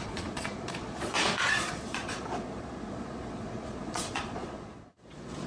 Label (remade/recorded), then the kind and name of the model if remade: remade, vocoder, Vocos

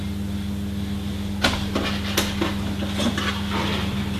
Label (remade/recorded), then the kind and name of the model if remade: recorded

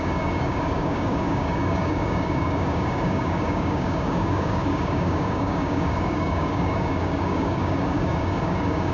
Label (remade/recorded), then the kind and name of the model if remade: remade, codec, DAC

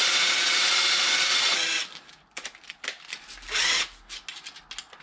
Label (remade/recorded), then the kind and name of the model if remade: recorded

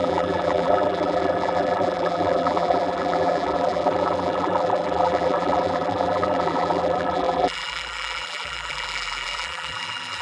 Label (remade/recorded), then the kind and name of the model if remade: remade, vocoder, BigVGAN v2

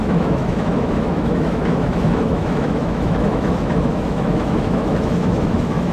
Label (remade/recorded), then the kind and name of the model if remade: remade, autoencoder, DAC-VAE